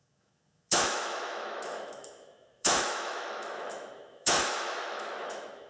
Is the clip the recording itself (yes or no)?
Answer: no